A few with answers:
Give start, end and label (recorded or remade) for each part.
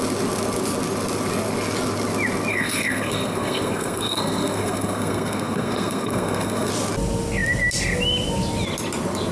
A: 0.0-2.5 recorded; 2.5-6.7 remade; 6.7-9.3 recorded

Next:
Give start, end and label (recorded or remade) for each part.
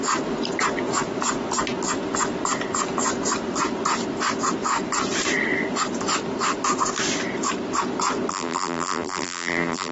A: 0.0-8.3 recorded; 8.3-9.9 remade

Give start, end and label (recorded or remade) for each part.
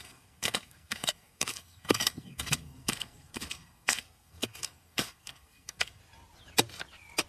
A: 0.0-6.0 remade; 6.0-7.3 recorded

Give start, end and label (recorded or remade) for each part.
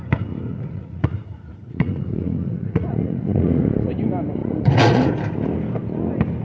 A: 0.0-0.5 recorded; 0.5-3.9 remade; 3.9-4.4 recorded; 4.4-5.1 remade; 5.1-6.4 recorded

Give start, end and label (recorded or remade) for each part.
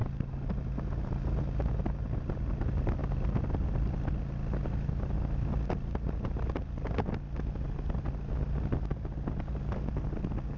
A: 0.0-10.6 recorded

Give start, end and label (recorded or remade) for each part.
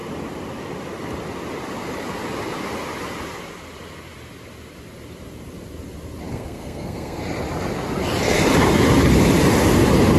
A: 0.0-6.3 recorded; 6.3-7.2 remade; 7.2-10.2 recorded